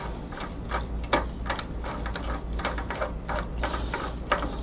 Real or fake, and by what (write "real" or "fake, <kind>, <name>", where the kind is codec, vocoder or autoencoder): real